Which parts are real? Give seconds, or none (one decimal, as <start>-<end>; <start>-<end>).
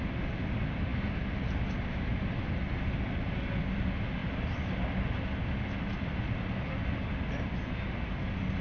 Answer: 0.0-8.6